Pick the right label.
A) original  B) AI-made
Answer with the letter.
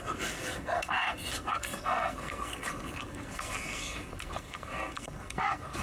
B